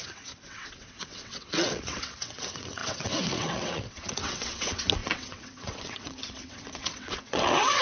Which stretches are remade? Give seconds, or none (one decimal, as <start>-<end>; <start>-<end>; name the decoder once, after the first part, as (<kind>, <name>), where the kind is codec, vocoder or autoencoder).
0.0-7.8 (vocoder, WaveNeXt)